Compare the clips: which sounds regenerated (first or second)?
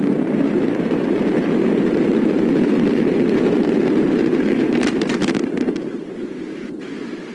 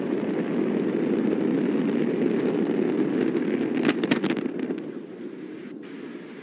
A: first